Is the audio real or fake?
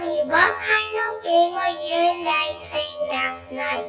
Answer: fake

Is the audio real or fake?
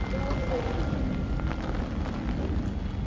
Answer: real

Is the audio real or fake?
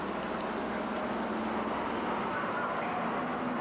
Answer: real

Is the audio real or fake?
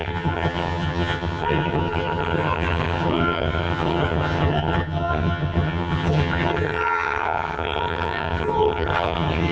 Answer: fake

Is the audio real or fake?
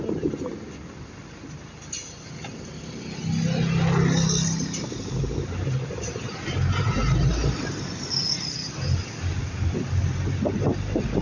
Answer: real